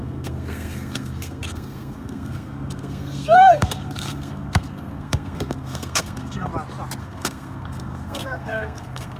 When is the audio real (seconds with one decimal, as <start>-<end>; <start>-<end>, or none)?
6.5-7.0

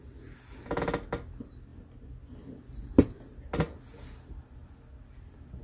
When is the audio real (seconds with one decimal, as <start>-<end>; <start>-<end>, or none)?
0.0-5.6

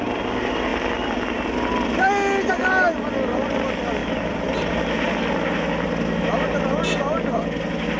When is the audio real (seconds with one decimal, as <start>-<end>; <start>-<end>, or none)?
0.0-4.0; 4.7-8.0

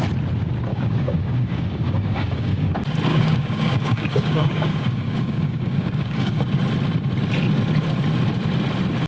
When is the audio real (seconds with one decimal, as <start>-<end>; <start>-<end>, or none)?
0.0-0.7; 2.7-3.1; 6.4-9.1

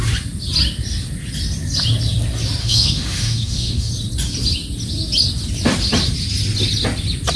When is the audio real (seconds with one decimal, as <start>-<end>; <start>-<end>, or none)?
0.0-2.6; 3.9-7.4

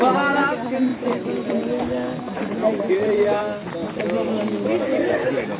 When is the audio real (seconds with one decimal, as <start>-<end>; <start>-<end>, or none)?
0.0-0.9; 1.8-2.6; 3.4-5.6